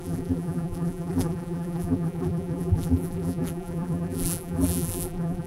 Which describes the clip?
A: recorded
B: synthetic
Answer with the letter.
B